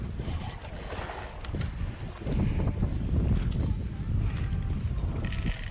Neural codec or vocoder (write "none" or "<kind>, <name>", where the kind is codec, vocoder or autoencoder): none